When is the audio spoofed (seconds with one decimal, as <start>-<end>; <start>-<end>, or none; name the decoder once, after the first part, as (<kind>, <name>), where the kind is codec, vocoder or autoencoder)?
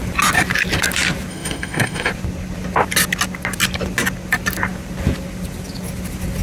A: 1.3-2.1 (autoencoder, DAC-VAE)